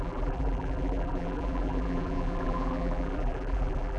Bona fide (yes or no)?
no